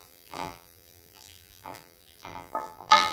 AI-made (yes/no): yes